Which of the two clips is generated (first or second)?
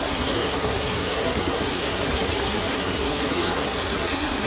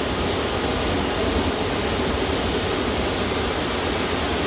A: first